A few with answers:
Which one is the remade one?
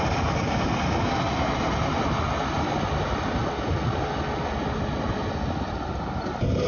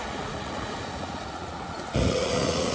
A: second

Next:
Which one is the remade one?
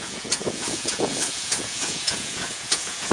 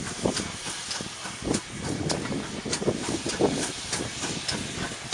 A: first